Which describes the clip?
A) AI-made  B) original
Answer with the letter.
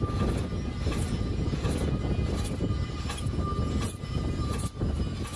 B